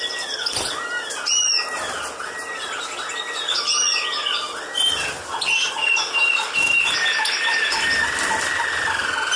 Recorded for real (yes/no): yes